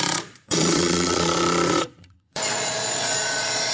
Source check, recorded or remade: remade